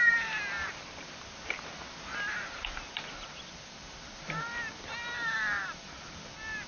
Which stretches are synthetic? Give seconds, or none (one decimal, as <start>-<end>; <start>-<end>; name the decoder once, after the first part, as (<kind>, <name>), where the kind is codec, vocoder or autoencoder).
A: none